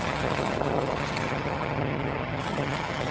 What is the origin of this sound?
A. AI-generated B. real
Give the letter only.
A